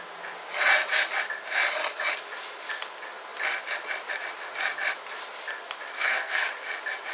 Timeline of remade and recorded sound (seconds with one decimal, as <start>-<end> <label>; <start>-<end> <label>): 0.0-5.9 recorded; 5.9-6.5 remade; 6.5-7.1 recorded